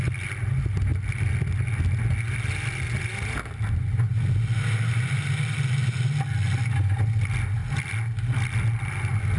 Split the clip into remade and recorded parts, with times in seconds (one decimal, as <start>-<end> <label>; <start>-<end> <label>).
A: 0.0-9.4 recorded